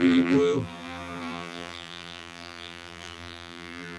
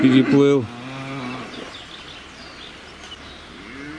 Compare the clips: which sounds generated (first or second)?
first